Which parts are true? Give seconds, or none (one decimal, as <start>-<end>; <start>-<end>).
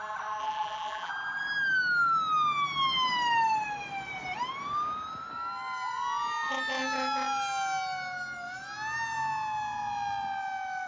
0.0-0.4; 1.1-10.9